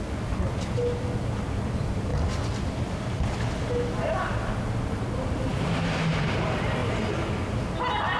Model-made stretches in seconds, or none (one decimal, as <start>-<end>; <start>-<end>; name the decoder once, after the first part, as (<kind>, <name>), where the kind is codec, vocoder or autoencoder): none